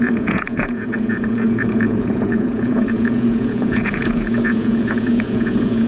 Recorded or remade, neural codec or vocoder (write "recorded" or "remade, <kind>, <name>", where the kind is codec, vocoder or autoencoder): remade, vocoder, Vocos